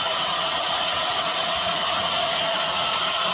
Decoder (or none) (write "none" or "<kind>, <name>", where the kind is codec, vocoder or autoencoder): vocoder, Vocos